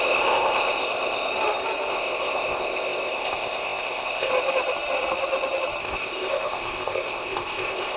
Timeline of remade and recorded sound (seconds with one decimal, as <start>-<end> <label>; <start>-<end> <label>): 0.0-1.3 remade; 1.3-1.9 recorded; 1.9-4.3 remade; 4.3-5.8 recorded; 5.8-8.0 remade